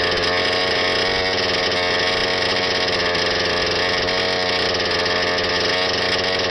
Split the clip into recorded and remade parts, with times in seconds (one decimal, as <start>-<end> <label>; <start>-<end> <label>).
0.0-6.5 recorded